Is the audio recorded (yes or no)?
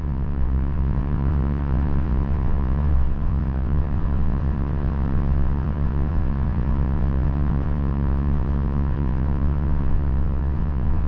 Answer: no